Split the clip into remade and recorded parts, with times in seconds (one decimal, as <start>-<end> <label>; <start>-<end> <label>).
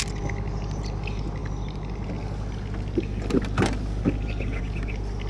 0.0-5.3 recorded